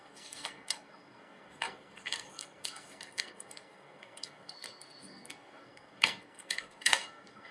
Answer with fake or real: fake